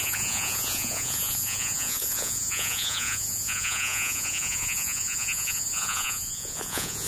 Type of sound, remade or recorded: remade